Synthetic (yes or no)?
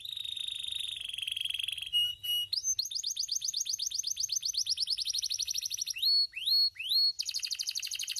no